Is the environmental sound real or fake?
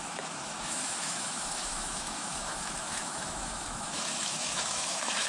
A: fake